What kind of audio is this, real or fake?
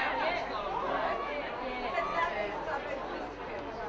real